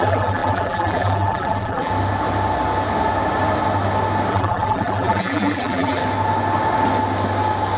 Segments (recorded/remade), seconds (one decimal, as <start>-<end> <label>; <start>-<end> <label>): 0.0-1.9 remade; 1.9-4.3 recorded; 4.3-6.0 remade; 6.0-7.8 recorded